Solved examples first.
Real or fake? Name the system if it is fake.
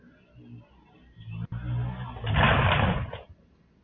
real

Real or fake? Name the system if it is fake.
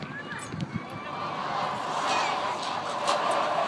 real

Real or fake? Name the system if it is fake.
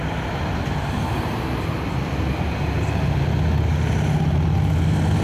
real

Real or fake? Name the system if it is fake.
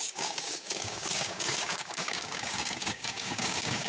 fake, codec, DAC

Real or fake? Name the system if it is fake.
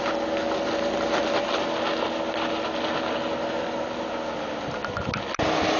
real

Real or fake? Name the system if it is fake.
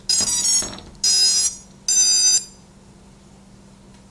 real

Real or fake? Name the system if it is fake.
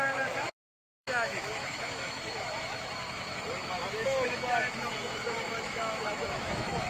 fake, autoencoder, DAC-VAE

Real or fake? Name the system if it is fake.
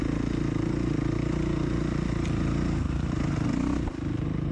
real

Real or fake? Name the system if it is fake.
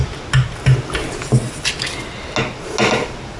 real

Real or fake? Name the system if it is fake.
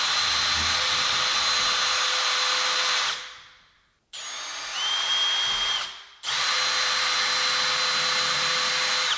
real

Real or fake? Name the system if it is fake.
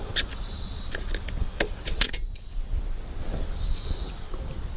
real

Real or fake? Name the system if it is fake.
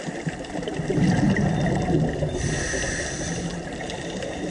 real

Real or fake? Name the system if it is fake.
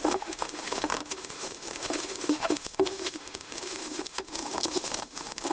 fake, autoencoder, DAC-VAE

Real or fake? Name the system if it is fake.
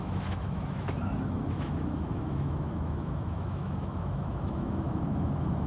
fake, autoencoder, DAC-VAE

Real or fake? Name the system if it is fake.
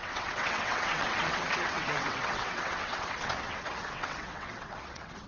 fake, vocoder, WaveNeXt